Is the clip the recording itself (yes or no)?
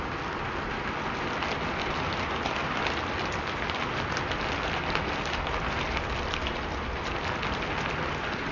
yes